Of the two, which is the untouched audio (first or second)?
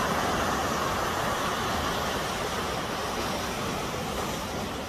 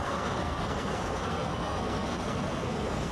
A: first